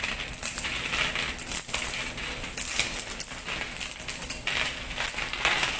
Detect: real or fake real